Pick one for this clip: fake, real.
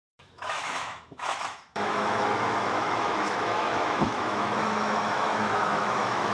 fake